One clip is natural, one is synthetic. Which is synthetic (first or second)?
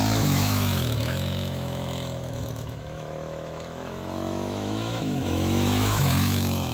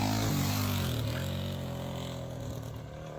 first